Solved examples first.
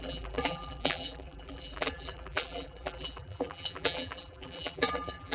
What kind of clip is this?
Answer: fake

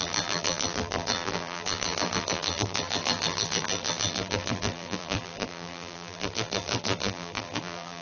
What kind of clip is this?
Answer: fake